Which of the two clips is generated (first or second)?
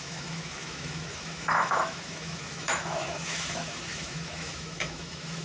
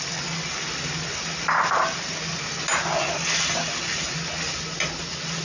first